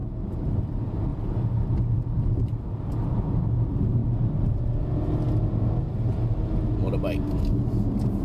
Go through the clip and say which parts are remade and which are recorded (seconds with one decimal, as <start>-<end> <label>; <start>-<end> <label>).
0.0-1.1 recorded; 1.1-2.8 remade; 2.8-8.2 recorded